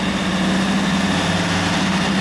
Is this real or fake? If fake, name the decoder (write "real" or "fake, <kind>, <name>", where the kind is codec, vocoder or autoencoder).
real